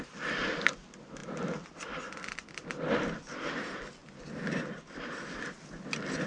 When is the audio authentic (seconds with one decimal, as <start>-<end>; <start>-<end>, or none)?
0.0-6.3

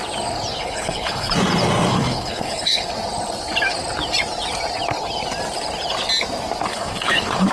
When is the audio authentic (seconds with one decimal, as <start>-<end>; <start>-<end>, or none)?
0.0-0.5; 1.3-1.9; 2.9-6.7

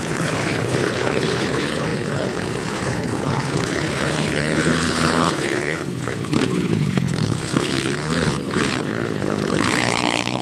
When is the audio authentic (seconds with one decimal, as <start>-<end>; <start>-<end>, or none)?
none

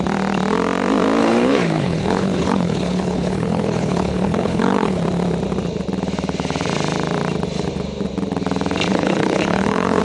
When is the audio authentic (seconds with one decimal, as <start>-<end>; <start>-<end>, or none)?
0.0-1.2; 5.0-8.9

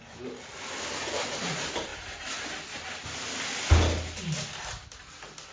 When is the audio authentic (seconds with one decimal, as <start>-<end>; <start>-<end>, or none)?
0.0-5.5